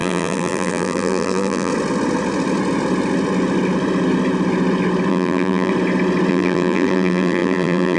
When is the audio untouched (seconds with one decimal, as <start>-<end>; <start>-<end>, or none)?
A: 1.7-5.1; 5.7-6.3